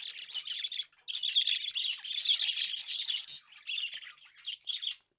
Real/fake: real